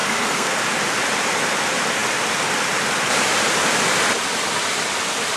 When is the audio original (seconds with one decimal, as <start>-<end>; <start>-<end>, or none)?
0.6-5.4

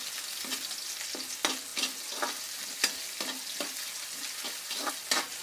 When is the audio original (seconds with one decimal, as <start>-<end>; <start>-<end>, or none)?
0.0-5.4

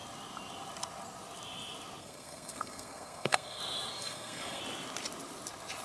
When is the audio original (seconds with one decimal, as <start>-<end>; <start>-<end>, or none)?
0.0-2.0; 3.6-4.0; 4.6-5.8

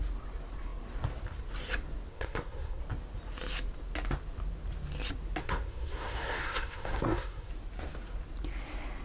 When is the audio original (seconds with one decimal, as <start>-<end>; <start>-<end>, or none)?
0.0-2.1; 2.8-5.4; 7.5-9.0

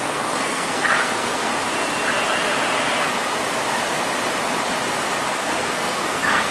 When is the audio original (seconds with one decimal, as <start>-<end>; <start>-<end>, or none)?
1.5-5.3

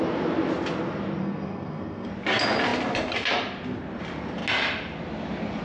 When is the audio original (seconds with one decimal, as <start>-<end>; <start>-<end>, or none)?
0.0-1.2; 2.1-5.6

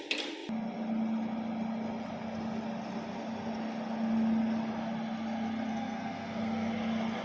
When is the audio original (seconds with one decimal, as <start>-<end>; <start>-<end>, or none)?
0.0-5.7; 6.7-7.2